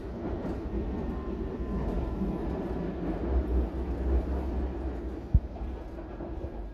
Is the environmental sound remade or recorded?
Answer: recorded